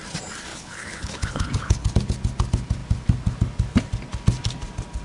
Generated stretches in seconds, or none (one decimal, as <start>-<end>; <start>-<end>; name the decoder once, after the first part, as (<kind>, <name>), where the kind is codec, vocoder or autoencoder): 0.5-1.9 (codec, HILCodec)

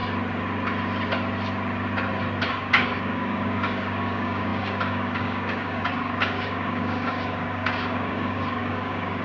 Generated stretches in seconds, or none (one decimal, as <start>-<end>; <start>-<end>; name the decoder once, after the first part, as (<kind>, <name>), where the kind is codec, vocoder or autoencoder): 2.5-9.2 (codec, DAC)